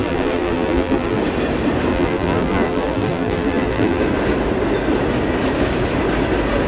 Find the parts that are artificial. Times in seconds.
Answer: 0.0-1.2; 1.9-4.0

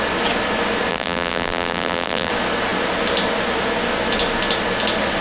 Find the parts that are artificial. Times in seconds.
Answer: 0.9-2.3

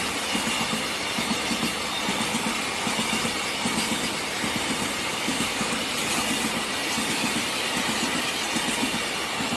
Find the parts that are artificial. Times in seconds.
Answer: 5.1-5.7

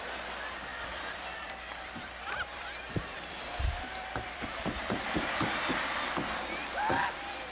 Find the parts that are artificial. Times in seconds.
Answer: 0.7-5.2; 6.6-7.5

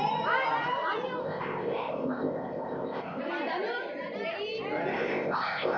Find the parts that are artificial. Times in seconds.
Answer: 1.2-3.2; 4.9-5.8